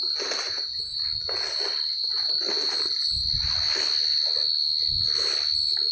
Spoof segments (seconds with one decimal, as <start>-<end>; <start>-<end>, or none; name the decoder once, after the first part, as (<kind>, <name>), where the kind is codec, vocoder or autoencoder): none